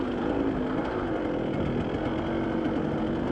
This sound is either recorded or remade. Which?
recorded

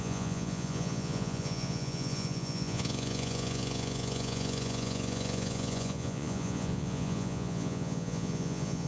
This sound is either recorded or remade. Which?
remade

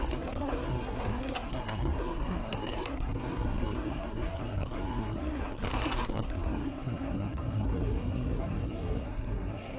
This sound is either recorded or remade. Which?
remade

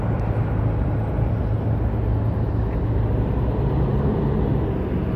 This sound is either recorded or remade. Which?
recorded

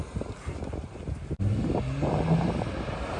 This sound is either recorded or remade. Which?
recorded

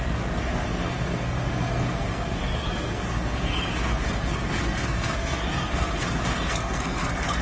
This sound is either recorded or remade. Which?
remade